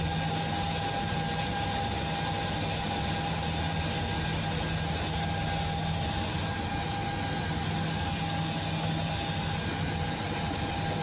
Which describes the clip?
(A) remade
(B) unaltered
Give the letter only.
B